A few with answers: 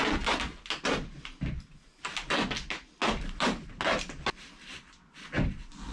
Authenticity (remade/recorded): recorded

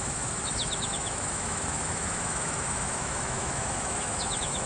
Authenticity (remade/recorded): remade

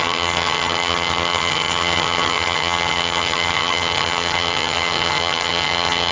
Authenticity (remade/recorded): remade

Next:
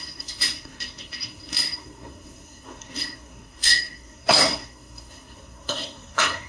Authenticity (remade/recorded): remade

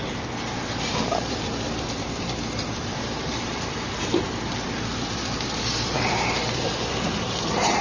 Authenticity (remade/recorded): remade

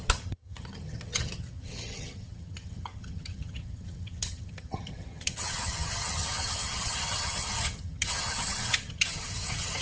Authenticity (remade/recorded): remade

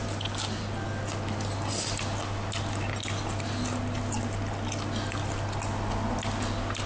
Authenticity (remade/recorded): recorded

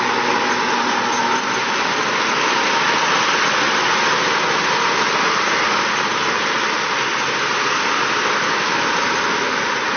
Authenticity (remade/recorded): recorded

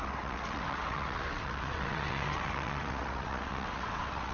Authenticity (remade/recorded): remade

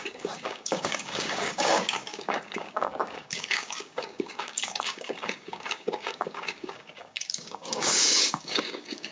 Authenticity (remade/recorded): remade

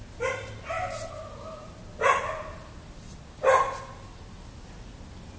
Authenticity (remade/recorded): recorded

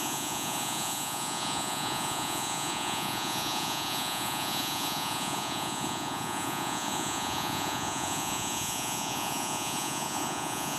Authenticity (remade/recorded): remade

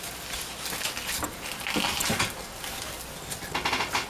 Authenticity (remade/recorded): recorded